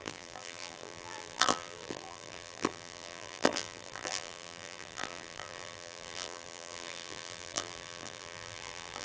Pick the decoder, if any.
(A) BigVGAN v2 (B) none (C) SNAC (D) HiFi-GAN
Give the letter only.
A